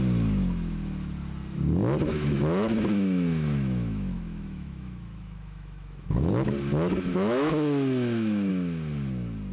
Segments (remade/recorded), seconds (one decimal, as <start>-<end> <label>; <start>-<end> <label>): 0.0-2.1 recorded; 2.1-6.5 remade; 6.5-7.1 recorded; 7.1-8.5 remade; 8.5-9.5 recorded